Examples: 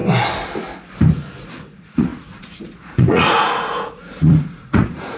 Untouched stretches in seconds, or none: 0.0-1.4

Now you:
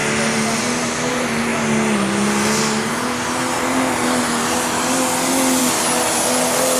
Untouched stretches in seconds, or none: 0.0-6.8

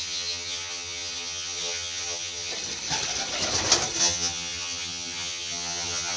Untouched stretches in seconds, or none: 2.5-4.0

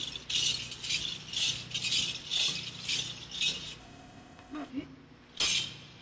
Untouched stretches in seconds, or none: 0.0-3.8; 4.7-6.0

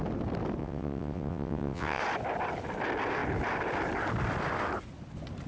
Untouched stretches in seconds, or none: 0.0-0.6; 2.0-5.5